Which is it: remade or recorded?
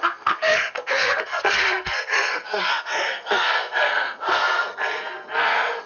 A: remade